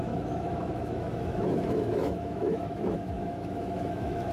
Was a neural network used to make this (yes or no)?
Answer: yes